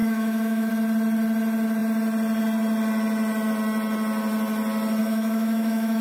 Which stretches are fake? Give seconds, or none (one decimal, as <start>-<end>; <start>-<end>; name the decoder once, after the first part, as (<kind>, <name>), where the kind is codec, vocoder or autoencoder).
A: 0.0-0.7 (autoencoder, DAC-VAE); 5.0-6.0